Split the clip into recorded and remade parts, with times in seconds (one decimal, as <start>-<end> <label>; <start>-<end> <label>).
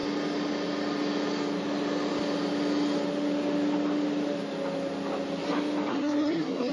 0.0-5.9 recorded; 5.9-6.7 remade